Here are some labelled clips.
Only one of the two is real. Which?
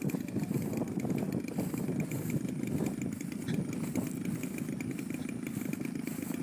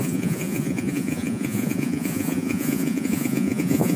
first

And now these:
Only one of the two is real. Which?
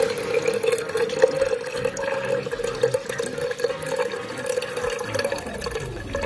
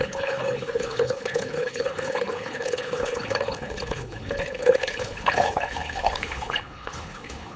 first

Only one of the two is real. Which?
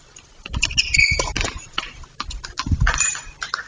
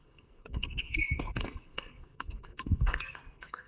first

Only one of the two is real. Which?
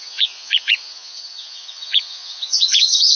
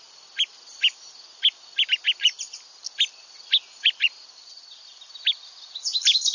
second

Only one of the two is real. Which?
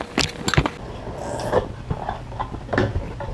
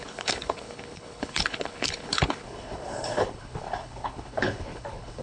first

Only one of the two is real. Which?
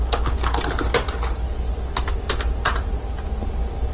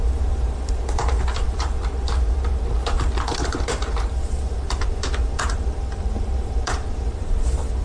first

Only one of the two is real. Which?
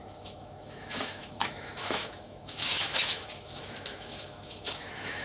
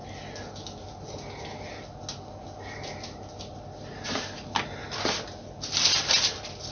second